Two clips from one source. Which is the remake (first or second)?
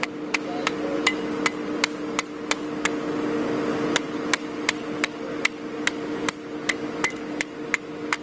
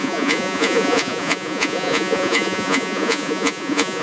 second